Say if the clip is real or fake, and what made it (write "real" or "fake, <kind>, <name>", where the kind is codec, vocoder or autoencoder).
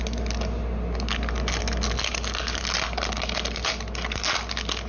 real